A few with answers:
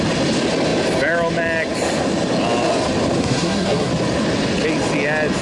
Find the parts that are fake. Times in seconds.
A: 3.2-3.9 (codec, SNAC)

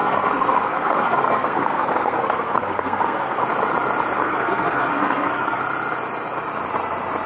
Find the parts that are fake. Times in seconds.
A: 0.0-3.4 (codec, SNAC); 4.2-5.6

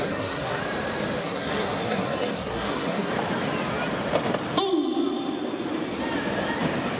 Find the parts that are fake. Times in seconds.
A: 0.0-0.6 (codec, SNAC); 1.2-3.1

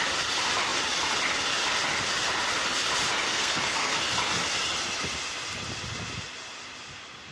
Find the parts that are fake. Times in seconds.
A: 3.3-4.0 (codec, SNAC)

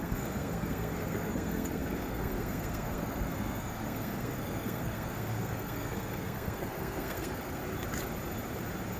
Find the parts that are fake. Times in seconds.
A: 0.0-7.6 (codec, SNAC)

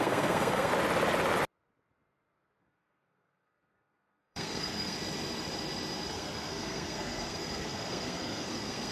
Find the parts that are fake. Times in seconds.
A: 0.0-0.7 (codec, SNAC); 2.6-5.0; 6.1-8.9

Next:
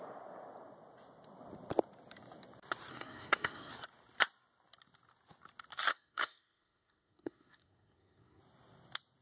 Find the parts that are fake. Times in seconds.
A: 2.9-3.7 (codec, SNAC); 5.9-8.4

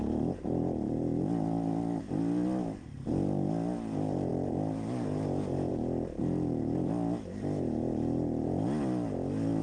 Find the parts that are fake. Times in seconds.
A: none